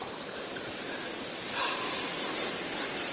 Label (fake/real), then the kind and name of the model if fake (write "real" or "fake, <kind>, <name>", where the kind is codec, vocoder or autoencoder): real